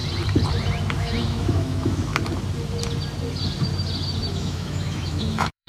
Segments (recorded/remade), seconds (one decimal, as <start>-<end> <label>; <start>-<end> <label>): 0.0-1.0 recorded; 1.0-2.1 remade; 2.1-4.3 recorded; 4.3-5.7 remade